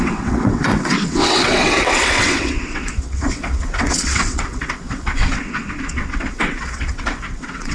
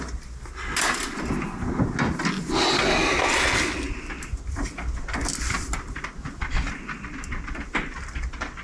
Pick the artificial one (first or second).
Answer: first